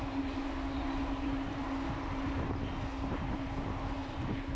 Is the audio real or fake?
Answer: real